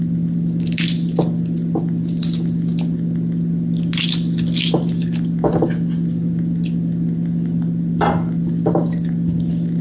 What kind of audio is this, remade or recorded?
recorded